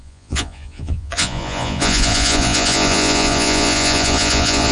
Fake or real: fake